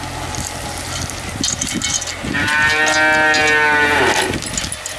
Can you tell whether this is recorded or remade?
recorded